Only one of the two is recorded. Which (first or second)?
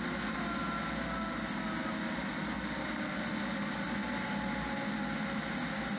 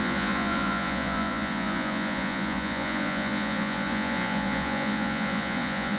first